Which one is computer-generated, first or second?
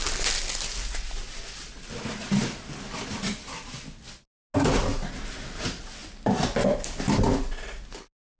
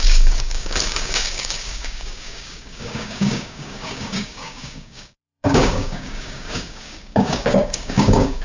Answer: second